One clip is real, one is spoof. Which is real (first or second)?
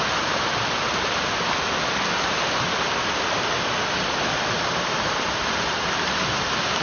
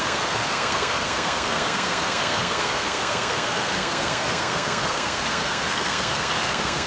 first